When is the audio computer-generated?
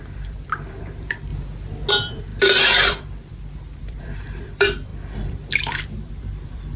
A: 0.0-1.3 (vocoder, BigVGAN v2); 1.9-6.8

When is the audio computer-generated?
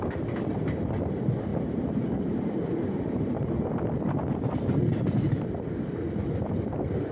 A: 0.0-7.1 (vocoder, BigVGAN v2)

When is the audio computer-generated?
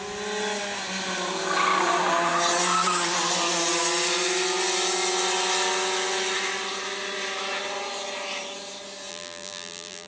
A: 9.1-10.1 (vocoder, BigVGAN v2)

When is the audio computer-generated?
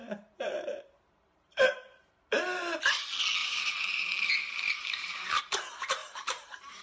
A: 0.0-2.8 (vocoder, BigVGAN v2); 3.4-5.4; 6.0-6.8